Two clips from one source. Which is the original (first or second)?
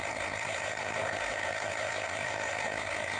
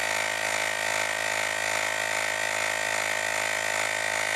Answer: second